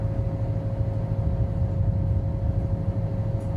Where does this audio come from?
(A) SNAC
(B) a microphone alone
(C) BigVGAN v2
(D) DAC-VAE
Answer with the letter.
B